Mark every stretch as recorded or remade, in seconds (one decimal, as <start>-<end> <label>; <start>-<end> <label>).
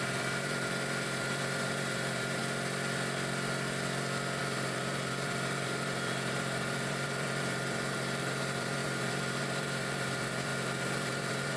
0.0-2.4 remade; 2.4-4.4 recorded; 4.4-11.6 remade